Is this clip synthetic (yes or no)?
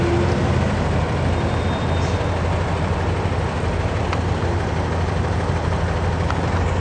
no